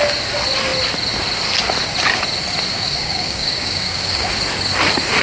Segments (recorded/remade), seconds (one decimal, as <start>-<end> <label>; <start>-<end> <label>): 0.0-2.7 recorded; 2.7-4.3 remade; 4.3-5.2 recorded